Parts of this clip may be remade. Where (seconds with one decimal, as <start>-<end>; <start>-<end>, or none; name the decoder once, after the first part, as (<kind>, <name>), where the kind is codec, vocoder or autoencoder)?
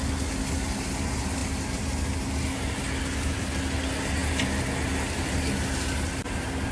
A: none